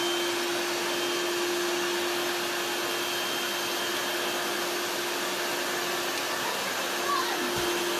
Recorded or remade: recorded